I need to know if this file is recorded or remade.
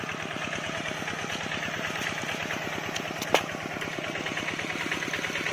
recorded